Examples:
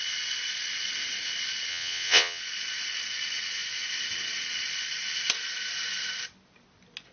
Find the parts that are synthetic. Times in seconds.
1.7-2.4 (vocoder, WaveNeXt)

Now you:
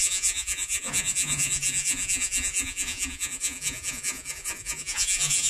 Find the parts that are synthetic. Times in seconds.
0.0-5.5 (vocoder, Vocos)